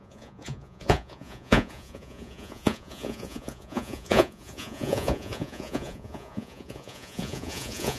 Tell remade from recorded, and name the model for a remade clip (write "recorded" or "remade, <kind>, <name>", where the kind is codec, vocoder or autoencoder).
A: remade, vocoder, Vocos